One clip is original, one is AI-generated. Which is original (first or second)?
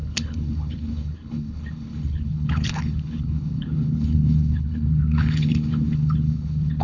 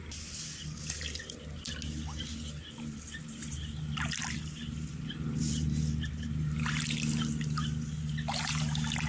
second